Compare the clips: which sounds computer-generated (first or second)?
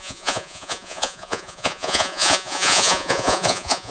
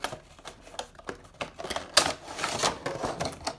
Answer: first